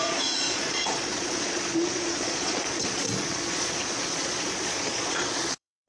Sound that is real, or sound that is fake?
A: fake